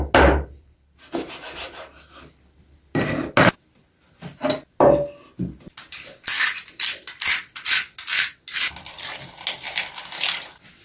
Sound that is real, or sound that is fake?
real